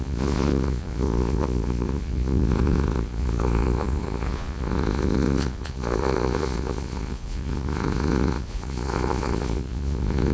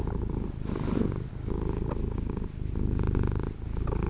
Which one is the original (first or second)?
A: second